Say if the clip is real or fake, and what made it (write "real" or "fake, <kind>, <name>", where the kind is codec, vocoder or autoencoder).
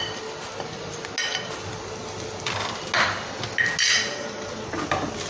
real